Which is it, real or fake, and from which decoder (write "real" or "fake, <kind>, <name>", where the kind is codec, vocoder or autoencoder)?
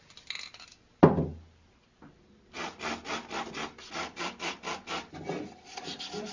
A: real